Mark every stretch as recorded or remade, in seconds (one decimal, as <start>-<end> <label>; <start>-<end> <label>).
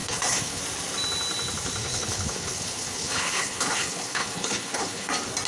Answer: 0.0-0.6 remade; 0.6-1.8 recorded; 1.8-5.1 remade; 5.1-5.5 recorded